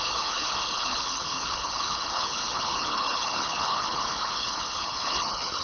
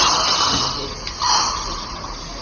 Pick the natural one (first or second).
second